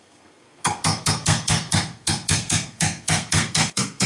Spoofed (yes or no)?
yes